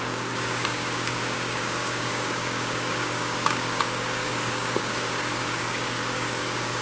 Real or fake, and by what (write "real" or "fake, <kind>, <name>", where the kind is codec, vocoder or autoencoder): fake, codec, DAC